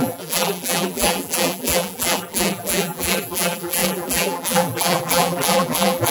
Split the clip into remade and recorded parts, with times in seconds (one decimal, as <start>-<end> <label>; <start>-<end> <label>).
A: 0.0-6.1 remade